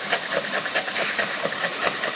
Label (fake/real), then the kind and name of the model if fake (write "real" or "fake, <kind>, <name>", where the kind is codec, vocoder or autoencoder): real